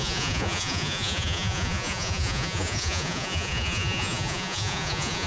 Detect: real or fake fake